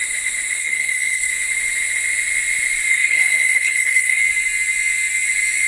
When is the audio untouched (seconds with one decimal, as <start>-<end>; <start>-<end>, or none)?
0.0-0.6; 1.3-2.9; 4.2-5.7